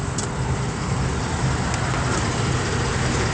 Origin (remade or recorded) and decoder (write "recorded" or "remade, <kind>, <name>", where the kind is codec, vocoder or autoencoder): recorded